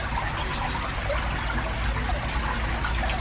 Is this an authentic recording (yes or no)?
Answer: yes